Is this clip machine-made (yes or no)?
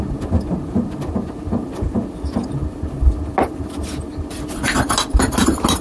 no